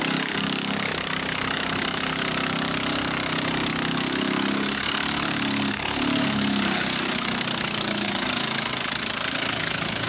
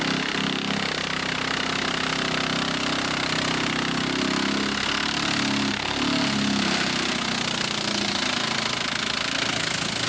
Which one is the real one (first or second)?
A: second